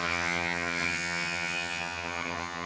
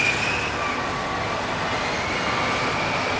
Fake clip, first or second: first